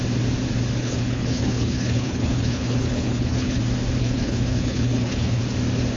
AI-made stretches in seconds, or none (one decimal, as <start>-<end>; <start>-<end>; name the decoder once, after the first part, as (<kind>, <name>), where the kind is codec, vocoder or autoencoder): 0.8-3.6 (codec, HILCodec); 4.0-5.4